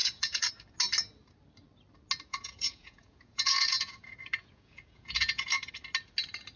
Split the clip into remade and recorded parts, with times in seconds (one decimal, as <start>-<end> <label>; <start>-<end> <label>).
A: 0.0-0.5 remade; 0.5-2.3 recorded; 2.3-5.7 remade; 5.7-6.6 recorded